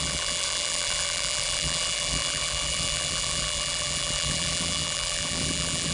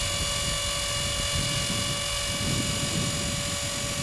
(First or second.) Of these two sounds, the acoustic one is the second